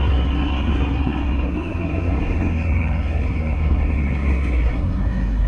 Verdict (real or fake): fake